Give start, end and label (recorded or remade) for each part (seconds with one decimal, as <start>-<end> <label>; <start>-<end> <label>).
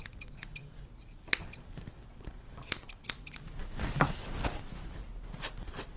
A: 0.0-6.0 recorded